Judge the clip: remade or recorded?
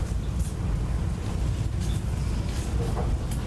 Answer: recorded